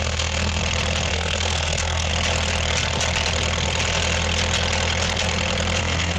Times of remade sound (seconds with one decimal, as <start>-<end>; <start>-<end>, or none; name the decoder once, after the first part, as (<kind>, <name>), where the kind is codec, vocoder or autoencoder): 0.0-0.6 (codec, SNAC); 1.1-2.1; 5.8-6.2